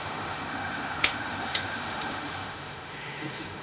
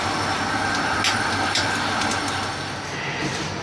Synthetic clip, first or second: first